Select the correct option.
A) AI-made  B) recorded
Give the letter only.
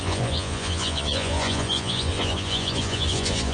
A